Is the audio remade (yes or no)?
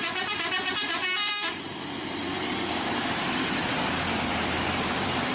yes